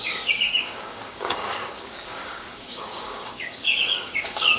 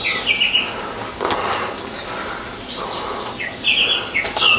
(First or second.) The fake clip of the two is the first